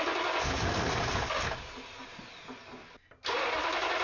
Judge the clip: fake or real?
real